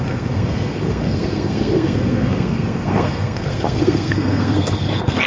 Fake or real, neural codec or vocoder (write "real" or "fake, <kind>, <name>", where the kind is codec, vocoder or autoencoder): fake, codec, SNAC